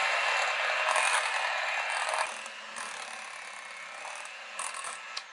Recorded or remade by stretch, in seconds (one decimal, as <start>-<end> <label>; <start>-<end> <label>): 0.0-5.3 recorded